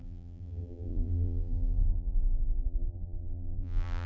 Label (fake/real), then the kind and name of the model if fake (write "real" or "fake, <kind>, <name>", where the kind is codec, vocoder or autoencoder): fake, vocoder, BigVGAN v2